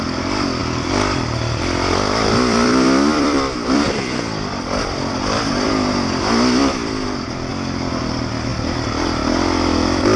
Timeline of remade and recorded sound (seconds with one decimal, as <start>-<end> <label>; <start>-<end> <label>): 0.0-0.6 recorded; 0.6-5.7 remade; 5.7-6.6 recorded; 6.6-7.5 remade; 7.5-10.2 recorded